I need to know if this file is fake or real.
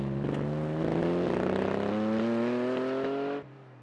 real